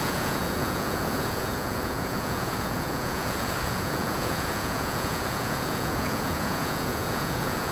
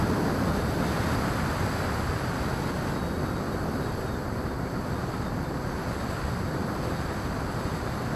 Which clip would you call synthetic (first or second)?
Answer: first